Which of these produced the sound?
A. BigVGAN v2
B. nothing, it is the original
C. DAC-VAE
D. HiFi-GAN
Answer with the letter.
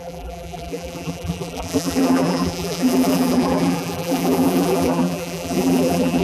A